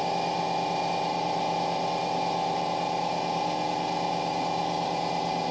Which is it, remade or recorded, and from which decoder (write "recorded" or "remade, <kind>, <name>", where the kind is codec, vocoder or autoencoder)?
recorded